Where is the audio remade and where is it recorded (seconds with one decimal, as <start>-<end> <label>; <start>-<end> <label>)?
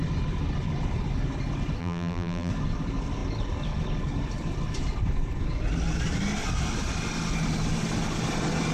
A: 0.0-1.8 recorded; 1.8-2.5 remade; 2.5-8.7 recorded